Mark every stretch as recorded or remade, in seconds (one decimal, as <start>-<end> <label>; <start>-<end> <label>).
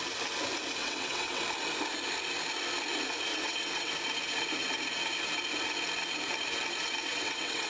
0.0-0.8 recorded; 0.8-1.4 remade; 1.4-3.3 recorded; 3.3-3.9 remade; 3.9-7.0 recorded; 7.0-7.7 remade